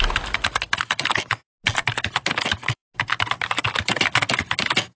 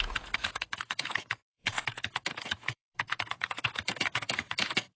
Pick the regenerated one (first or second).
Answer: second